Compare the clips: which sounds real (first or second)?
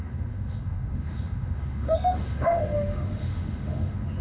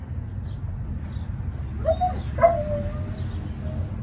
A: second